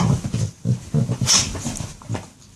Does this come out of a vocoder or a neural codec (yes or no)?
no